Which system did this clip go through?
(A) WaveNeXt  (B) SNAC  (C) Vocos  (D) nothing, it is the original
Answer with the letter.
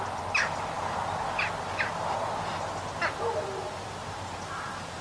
D